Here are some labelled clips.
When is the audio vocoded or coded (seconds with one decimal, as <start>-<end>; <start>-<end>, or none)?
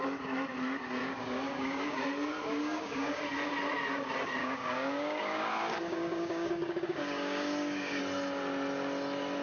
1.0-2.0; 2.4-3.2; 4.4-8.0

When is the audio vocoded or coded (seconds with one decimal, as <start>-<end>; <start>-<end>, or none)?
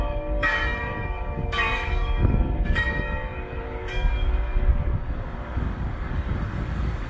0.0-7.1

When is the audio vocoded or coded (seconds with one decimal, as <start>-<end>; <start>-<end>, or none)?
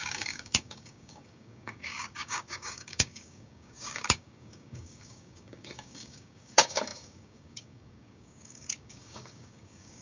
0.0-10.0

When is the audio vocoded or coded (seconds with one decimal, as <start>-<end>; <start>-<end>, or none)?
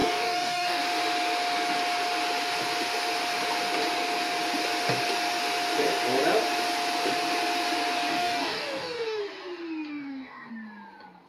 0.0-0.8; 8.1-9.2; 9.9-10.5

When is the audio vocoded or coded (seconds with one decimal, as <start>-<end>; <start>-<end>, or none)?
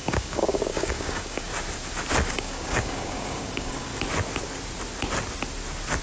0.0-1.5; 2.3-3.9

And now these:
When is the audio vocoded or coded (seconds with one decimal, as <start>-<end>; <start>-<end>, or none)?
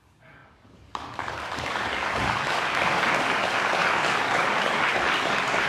0.0-5.7